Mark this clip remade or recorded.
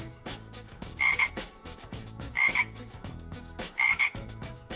remade